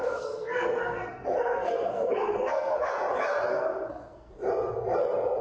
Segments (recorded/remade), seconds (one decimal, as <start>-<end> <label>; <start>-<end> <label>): 0.0-2.9 remade; 2.9-3.5 recorded; 3.5-4.3 remade; 4.3-5.4 recorded